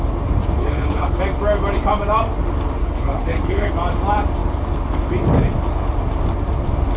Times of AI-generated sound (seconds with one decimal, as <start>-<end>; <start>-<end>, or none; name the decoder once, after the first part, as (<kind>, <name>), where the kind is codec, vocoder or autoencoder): 0.6-1.2 (codec, HILCodec); 2.8-3.7